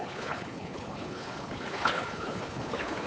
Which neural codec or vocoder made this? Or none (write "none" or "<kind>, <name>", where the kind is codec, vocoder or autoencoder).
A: codec, HILCodec